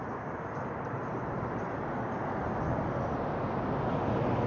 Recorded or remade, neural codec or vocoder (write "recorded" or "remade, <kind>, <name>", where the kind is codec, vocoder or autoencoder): recorded